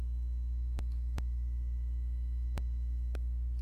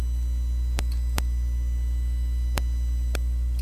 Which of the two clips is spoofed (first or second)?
first